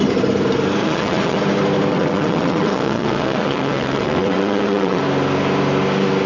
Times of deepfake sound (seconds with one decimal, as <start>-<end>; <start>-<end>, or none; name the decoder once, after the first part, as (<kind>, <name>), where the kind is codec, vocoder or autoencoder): 0.8-1.4 (vocoder, WaveNeXt); 1.9-5.0